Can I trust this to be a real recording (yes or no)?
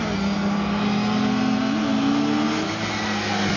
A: yes